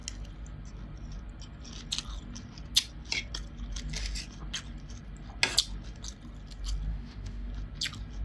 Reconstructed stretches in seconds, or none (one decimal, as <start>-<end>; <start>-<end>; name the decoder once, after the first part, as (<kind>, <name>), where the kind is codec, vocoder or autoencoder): 6.9-7.5 (autoencoder, DAC-VAE)